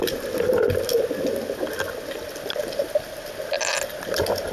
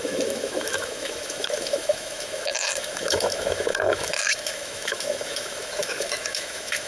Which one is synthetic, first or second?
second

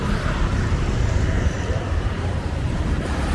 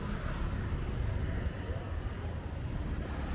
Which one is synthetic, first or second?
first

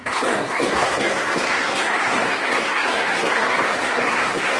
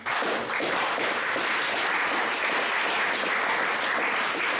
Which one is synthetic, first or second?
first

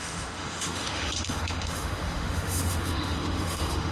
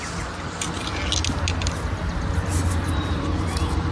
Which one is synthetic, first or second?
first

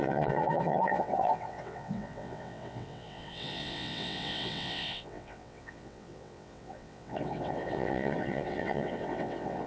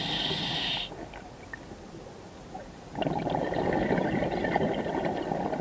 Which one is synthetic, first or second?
first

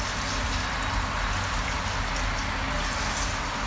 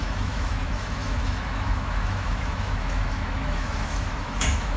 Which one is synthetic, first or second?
second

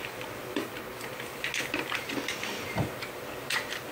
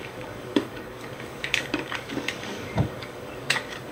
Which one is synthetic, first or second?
second